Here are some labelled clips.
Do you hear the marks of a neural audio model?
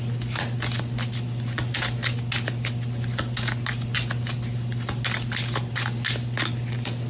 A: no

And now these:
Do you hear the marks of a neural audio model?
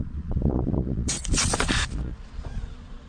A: yes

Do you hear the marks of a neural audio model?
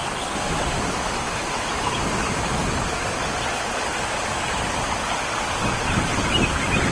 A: no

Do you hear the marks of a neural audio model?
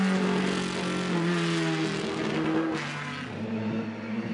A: no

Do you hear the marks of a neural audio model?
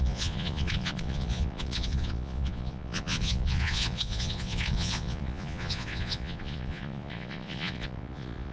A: yes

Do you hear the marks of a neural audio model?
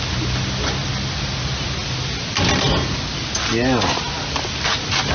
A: no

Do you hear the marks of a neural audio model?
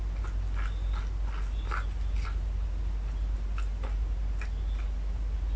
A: no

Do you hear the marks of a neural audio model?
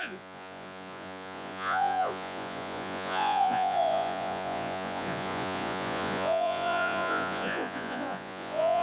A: yes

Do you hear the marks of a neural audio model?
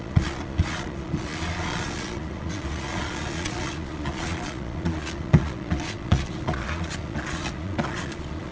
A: yes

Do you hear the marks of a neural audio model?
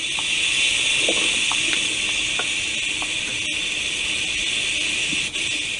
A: no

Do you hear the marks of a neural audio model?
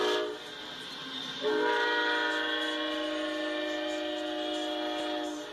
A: no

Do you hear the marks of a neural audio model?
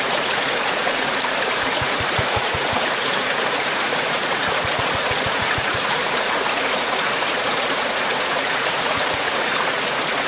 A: yes